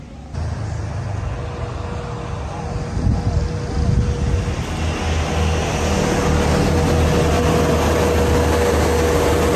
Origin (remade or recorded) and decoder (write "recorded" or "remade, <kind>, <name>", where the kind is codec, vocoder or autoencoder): recorded